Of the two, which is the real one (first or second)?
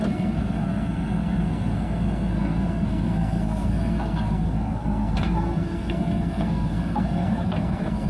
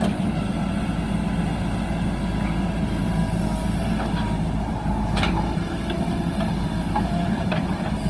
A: second